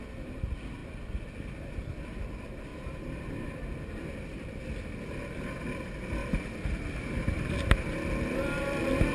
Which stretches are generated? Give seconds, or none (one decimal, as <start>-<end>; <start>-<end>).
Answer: 2.7-3.8; 6.2-8.1